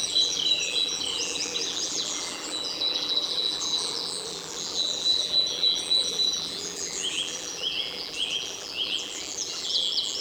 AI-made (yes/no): yes